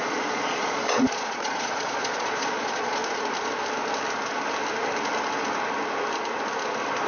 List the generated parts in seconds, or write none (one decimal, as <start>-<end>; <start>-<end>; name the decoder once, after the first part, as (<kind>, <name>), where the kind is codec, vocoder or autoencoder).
0.0-3.0 (vocoder, Vocos)